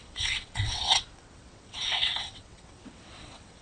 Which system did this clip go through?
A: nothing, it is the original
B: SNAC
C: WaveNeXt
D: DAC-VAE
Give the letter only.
C